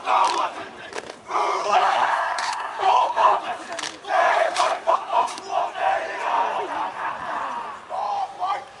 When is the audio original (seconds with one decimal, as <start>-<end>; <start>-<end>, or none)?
0.0-1.6; 3.4-4.3; 5.4-8.8